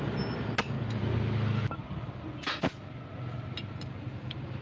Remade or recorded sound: recorded